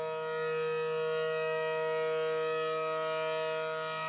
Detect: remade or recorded recorded